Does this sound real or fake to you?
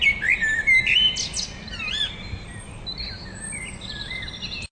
real